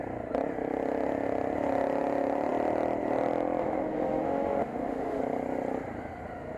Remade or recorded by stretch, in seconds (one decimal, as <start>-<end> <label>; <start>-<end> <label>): 0.0-3.6 recorded; 3.6-5.2 remade; 5.2-6.6 recorded